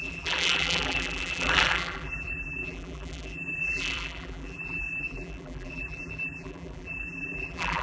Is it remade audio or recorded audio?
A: remade